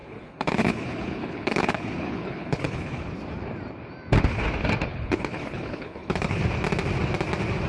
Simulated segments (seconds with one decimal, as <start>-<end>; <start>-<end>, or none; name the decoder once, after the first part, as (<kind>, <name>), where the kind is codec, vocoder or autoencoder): 0.0-3.1 (codec, HILCodec); 4.9-6.4